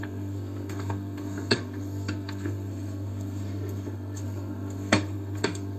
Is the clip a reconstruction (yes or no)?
yes